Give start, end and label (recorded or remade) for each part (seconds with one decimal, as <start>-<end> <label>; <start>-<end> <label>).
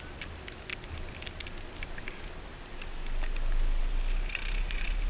0.0-5.1 recorded